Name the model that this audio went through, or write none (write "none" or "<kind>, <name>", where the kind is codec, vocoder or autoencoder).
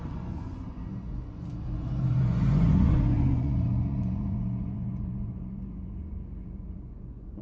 vocoder, Vocos